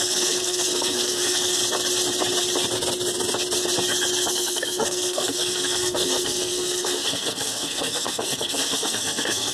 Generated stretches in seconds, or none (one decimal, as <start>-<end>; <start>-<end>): 0.0-1.6; 4.3-9.5